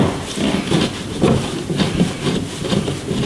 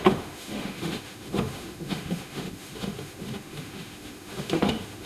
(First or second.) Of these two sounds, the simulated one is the second